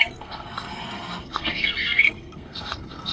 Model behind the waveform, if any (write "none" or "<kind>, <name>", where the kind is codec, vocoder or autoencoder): codec, SNAC